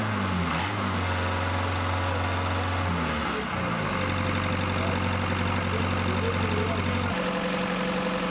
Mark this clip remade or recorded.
recorded